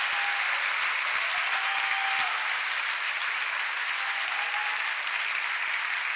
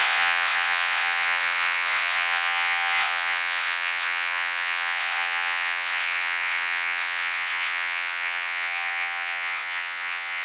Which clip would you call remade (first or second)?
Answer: second